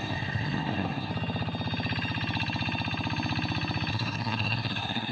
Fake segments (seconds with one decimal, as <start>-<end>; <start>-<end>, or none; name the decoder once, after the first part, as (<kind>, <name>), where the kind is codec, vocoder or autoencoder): 0.0-1.1 (codec, SNAC); 3.9-5.1